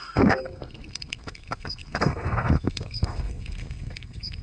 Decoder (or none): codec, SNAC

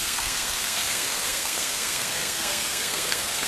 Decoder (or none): codec, SNAC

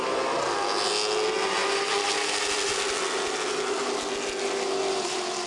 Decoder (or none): none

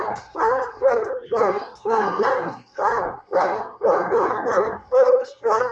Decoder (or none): codec, SNAC